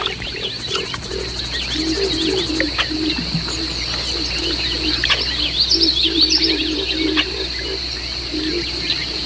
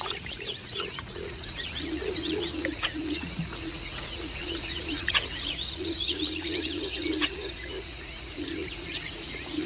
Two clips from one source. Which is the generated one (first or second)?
second